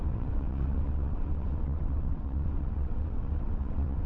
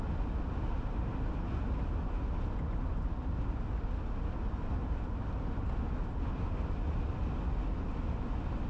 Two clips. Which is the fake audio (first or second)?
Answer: first